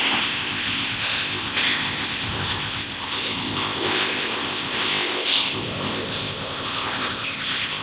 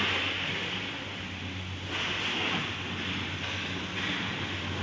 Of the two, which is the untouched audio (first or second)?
second